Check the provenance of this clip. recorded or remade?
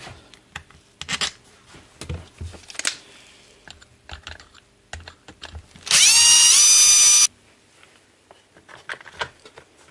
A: recorded